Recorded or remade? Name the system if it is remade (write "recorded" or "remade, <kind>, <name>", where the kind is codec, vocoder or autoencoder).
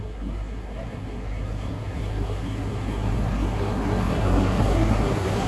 remade, codec, SNAC